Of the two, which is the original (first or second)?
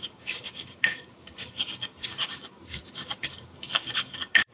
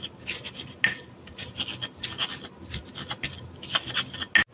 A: second